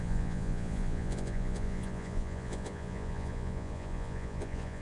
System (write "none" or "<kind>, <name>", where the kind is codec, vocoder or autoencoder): vocoder, Vocos